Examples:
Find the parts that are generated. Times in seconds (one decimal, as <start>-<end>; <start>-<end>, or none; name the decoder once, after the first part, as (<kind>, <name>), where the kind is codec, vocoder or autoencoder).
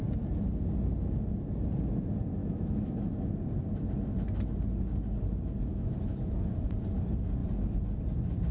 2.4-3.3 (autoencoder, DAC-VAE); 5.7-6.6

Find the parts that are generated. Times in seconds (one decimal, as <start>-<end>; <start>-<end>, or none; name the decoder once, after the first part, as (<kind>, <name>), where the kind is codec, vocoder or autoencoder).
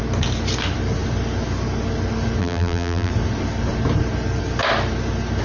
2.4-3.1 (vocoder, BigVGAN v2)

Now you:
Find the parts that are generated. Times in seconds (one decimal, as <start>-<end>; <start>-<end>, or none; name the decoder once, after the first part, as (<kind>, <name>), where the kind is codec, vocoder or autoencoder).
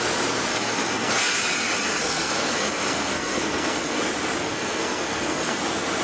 0.5-1.4 (codec, SNAC); 1.9-4.0; 4.4-5.6